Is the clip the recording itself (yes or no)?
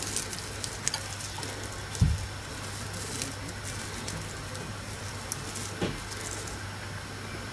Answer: yes